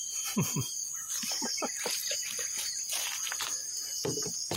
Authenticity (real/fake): fake